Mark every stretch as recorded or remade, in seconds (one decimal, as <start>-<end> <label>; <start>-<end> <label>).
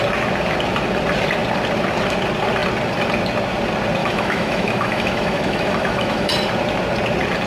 0.0-4.0 recorded; 4.0-6.3 remade; 6.3-7.5 recorded